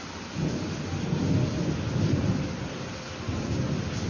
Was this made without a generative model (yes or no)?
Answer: yes